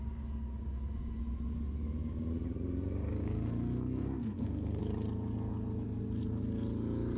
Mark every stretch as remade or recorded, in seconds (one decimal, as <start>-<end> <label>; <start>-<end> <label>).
0.0-3.2 recorded; 3.2-4.8 remade; 4.8-7.2 recorded